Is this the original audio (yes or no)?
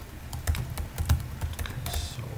yes